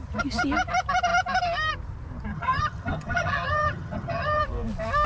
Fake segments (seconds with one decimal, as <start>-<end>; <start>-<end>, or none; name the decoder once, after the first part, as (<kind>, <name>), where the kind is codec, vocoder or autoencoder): 2.3-4.4 (vocoder, HiFi-GAN)